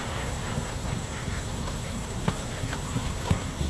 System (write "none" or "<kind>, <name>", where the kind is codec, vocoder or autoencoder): codec, SNAC